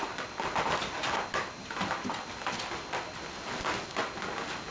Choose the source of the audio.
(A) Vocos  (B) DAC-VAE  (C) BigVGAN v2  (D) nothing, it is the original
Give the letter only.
D